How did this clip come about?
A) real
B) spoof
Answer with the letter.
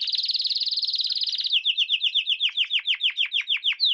A